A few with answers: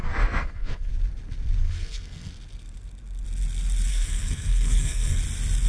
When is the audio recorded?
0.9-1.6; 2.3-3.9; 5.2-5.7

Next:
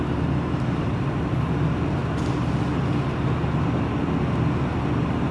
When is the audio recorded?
0.0-5.3